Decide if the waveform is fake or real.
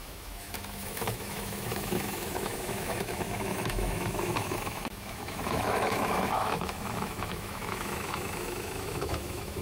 fake